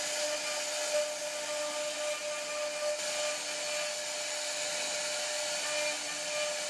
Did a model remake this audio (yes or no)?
no